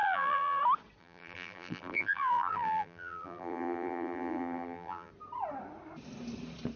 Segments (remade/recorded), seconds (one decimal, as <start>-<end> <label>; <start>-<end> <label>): 0.0-0.6 remade; 0.6-1.0 recorded; 1.0-5.1 remade; 5.1-6.8 recorded